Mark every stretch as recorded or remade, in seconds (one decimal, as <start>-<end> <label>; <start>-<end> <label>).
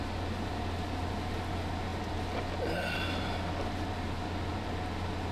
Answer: 0.0-5.3 recorded